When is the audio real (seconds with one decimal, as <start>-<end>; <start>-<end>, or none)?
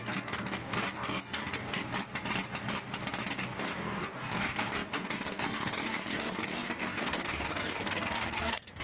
1.8-3.3